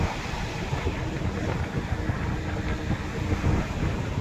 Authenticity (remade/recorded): recorded